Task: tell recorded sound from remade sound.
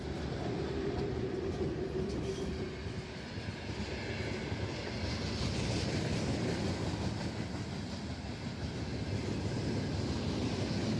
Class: recorded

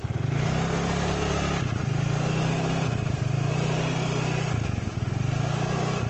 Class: recorded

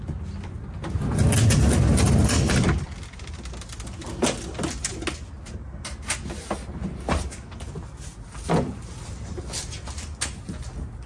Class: recorded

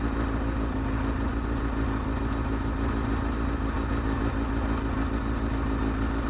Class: recorded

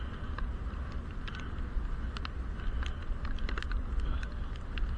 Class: recorded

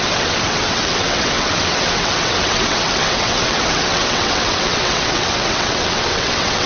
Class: remade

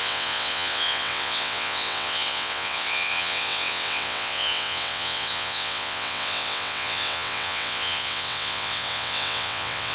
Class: remade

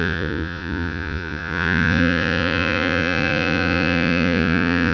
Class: remade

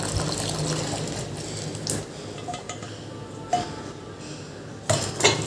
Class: recorded